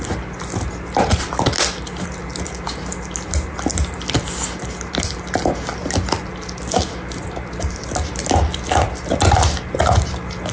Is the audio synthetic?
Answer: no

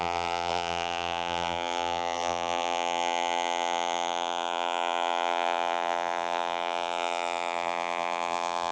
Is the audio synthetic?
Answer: yes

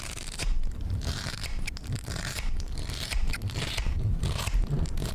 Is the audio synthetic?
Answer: yes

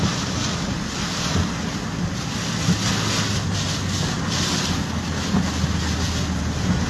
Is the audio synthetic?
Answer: no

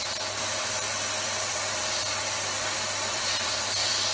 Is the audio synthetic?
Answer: yes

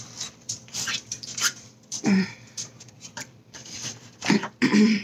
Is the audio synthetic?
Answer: yes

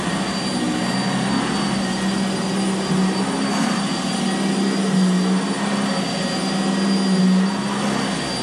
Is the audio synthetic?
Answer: no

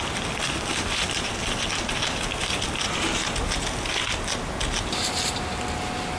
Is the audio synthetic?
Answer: no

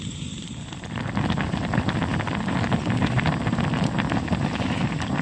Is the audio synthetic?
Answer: no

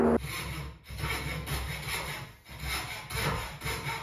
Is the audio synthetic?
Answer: no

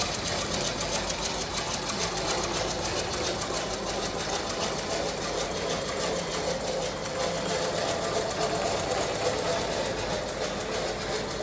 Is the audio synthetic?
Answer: no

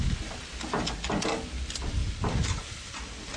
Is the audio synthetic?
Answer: no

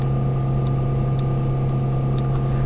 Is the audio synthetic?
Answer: no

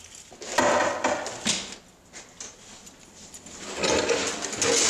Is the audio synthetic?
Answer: no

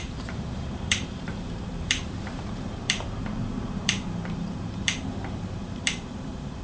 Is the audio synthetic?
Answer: yes